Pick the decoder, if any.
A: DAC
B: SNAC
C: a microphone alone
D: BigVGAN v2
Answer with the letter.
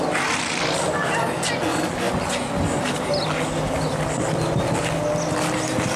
C